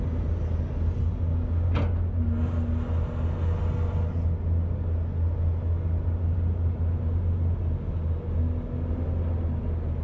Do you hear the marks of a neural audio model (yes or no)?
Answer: no